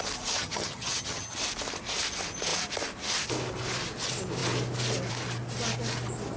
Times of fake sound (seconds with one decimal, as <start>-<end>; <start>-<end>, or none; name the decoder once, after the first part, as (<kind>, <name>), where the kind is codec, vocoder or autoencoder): 0.4-1.4 (vocoder, HiFi-GAN)